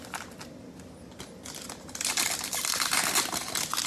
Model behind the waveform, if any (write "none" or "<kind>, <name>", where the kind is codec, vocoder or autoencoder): none